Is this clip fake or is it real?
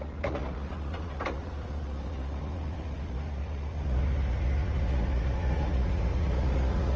fake